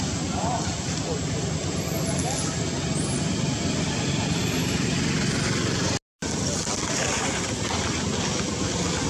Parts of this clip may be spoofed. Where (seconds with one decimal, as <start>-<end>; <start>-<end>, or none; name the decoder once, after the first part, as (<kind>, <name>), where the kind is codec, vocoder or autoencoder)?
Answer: none